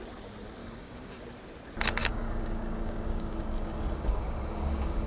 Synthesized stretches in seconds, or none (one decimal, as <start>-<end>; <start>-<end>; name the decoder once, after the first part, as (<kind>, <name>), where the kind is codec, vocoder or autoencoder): 0.6-1.2 (codec, DAC); 2.0-5.1